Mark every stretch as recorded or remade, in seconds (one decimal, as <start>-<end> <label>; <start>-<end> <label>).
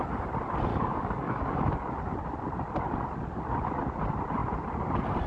0.0-0.7 recorded; 0.7-1.7 remade; 1.7-5.3 recorded